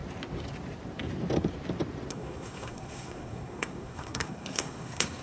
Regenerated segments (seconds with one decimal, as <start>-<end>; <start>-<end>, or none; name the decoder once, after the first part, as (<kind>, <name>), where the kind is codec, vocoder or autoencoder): 2.1-5.2 (codec, SNAC)